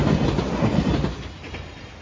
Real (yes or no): yes